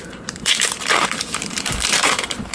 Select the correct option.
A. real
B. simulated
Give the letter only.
B